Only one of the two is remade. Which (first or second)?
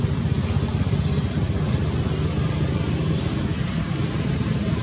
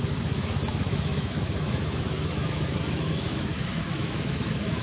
second